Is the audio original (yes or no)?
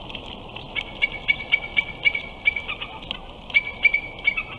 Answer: yes